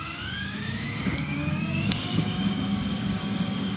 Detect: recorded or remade remade